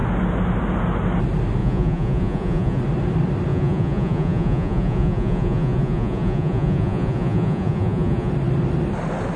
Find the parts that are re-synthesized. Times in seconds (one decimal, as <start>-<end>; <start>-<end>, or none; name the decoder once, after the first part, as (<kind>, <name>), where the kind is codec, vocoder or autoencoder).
1.6-2.8 (vocoder, Vocos); 3.5-8.3